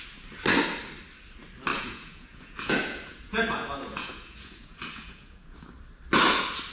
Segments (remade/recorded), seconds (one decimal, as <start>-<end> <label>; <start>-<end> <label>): 0.0-1.7 recorded; 1.7-5.7 remade; 5.7-6.7 recorded